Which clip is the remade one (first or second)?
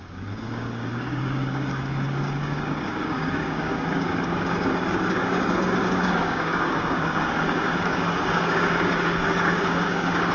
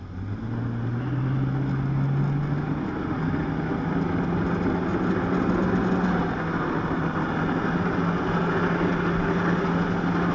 first